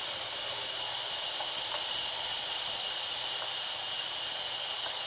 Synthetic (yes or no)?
no